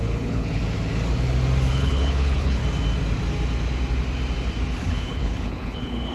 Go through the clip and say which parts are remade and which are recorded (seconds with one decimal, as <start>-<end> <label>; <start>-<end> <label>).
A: 0.0-0.6 remade; 0.6-1.7 recorded; 1.7-2.6 remade; 2.6-4.8 recorded; 4.8-6.1 remade